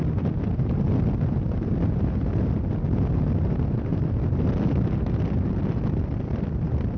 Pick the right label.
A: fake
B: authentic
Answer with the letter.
B